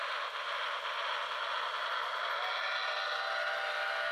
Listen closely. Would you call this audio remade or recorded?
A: recorded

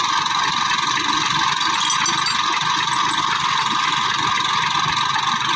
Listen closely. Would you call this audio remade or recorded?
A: recorded